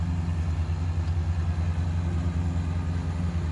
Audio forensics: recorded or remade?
recorded